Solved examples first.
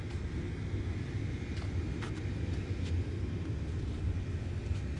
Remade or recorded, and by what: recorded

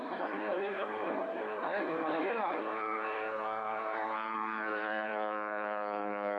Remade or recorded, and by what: remade, codec, SNAC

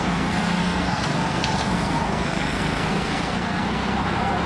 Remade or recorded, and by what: remade, codec, SNAC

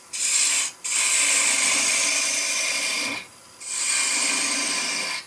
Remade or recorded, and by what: recorded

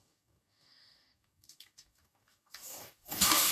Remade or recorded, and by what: remade, codec, DAC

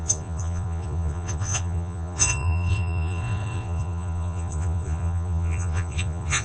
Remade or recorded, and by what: remade, vocoder, Vocos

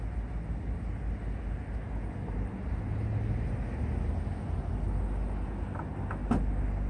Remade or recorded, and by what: recorded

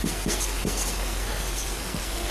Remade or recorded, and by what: remade, codec, SNAC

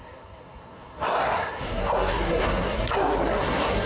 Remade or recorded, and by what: remade, codec, SNAC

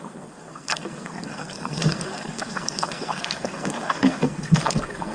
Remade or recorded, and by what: remade, codec, SNAC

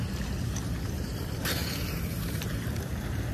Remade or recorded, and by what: remade, vocoder, BigVGAN v2